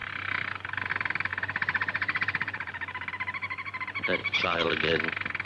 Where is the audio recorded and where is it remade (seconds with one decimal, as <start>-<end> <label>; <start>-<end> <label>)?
0.0-1.3 recorded; 1.3-3.1 remade; 3.1-4.2 recorded; 4.2-4.7 remade; 4.7-5.5 recorded